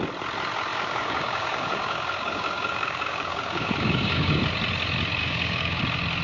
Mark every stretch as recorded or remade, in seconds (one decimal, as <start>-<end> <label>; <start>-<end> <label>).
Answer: 0.0-0.7 recorded; 0.7-4.4 remade; 4.4-5.2 recorded; 5.2-5.8 remade; 5.8-6.2 recorded